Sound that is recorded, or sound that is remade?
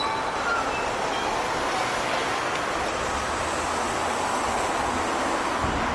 recorded